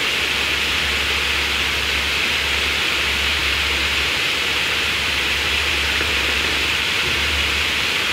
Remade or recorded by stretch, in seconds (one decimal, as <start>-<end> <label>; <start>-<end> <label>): 0.0-3.0 recorded; 3.0-8.1 remade